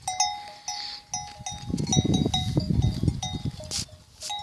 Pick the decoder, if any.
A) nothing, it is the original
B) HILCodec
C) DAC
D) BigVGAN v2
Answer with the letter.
A